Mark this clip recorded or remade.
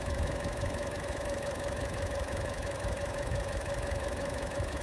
remade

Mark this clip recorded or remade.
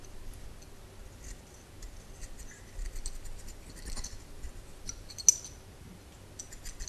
recorded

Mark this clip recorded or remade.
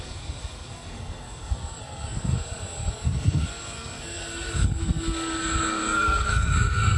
remade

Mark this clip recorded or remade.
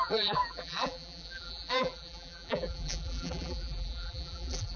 remade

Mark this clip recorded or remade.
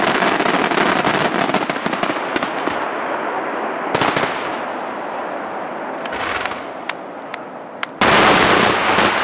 recorded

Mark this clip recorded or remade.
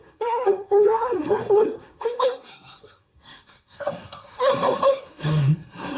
remade